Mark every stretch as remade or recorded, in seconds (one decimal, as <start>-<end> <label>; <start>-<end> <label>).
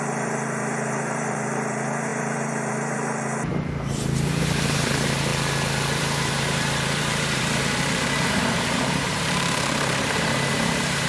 0.0-5.3 remade; 5.3-6.0 recorded; 6.0-11.1 remade